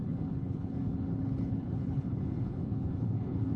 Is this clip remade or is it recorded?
remade